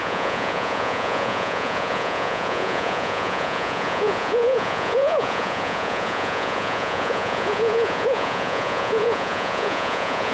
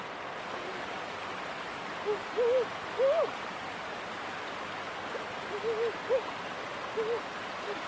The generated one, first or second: first